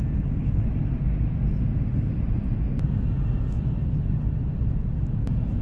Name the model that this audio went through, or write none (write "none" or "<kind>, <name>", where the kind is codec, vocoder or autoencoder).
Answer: none